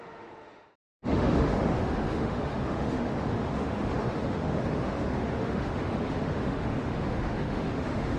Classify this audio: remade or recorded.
remade